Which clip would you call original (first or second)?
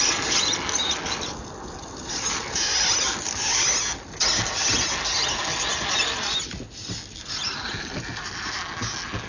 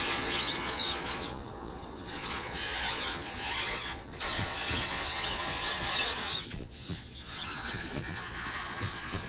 first